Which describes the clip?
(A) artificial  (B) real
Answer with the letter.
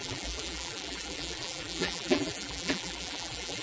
A